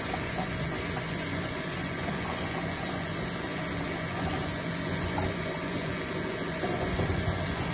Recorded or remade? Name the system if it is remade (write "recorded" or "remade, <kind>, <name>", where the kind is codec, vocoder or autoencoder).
remade, vocoder, Vocos